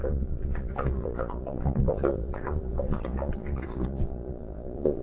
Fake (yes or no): yes